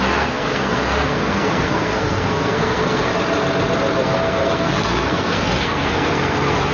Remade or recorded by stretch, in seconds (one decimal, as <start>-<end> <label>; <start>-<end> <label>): 0.0-3.1 remade; 3.1-4.0 recorded; 4.0-6.7 remade